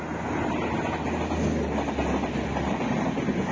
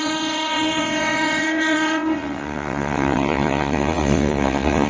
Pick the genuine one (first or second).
first